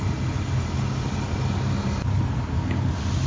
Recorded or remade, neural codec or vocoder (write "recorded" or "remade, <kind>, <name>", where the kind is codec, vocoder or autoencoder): recorded